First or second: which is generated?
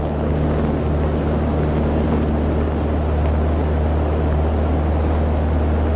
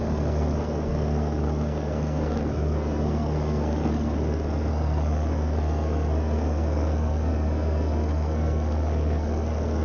second